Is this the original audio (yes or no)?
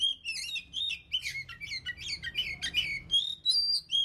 yes